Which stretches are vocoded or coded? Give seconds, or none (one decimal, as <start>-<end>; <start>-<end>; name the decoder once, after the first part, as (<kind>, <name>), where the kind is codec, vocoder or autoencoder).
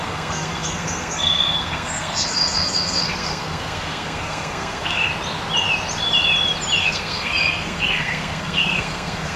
0.0-5.1 (codec, SNAC); 6.8-9.4